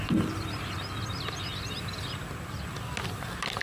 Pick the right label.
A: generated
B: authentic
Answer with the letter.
B